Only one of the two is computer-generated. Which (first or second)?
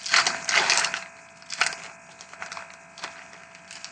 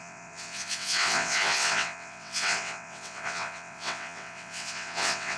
second